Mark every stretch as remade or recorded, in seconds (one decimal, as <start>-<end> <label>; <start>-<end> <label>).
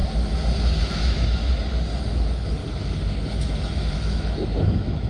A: 0.0-0.8 recorded; 0.8-1.4 remade; 1.4-2.1 recorded; 2.1-2.6 remade; 2.6-3.9 recorded; 3.9-5.1 remade